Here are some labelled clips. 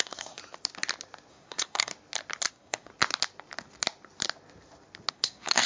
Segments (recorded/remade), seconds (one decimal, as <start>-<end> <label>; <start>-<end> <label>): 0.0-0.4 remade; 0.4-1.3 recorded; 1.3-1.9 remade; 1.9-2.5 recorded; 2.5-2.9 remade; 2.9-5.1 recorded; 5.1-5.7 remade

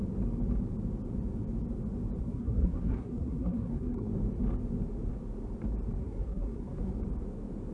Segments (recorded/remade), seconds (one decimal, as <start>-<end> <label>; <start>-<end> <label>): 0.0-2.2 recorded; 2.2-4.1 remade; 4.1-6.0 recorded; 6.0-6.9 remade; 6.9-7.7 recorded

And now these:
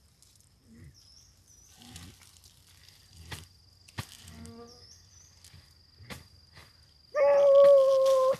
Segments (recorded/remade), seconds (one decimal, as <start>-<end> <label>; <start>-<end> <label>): 0.0-8.4 recorded

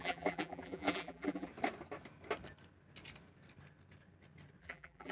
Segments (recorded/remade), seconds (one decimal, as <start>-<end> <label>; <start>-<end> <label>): 0.0-1.5 remade; 1.5-4.6 recorded; 4.6-5.1 remade

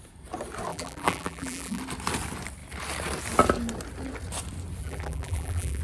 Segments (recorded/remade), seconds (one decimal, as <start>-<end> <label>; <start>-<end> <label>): 0.0-0.7 recorded; 0.7-1.8 remade; 1.8-4.8 recorded; 4.8-5.8 remade

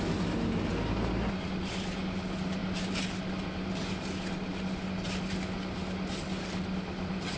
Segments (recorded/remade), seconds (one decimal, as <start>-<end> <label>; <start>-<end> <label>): 0.0-7.4 recorded